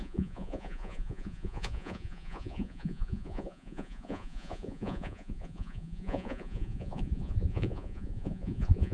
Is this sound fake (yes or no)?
yes